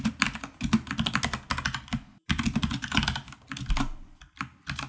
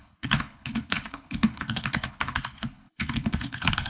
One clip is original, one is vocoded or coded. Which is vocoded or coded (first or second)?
second